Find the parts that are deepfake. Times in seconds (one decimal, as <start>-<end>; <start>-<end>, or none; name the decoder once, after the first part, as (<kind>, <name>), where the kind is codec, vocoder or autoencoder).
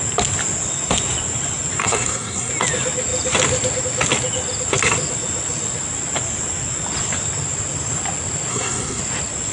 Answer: 1.8-2.5 (codec, SNAC); 8.5-9.0